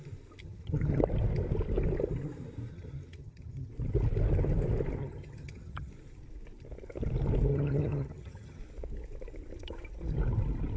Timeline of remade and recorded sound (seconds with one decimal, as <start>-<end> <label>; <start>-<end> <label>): 0.0-0.4 recorded; 0.4-1.0 remade; 1.0-2.7 recorded; 2.7-3.7 remade; 3.7-5.0 recorded; 5.0-5.9 remade; 5.9-7.5 recorded; 7.5-8.6 remade; 8.6-10.8 recorded